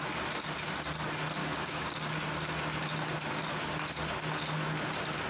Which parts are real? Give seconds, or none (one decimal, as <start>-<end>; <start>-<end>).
0.0-1.4; 2.1-5.3